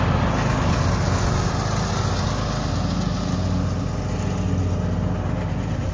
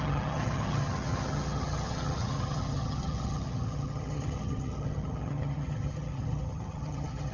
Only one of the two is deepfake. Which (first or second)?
second